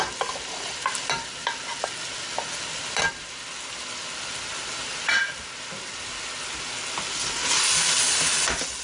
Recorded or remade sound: recorded